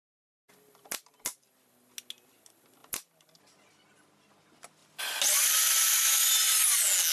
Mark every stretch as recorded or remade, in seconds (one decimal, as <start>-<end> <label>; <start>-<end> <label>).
0.0-7.1 recorded